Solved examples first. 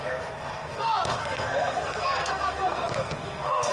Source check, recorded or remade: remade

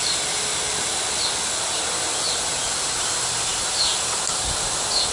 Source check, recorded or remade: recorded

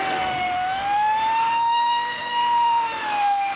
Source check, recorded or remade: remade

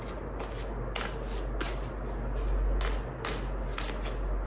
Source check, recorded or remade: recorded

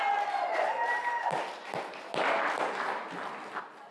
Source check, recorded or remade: recorded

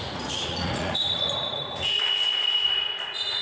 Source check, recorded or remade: remade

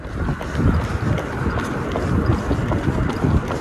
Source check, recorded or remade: recorded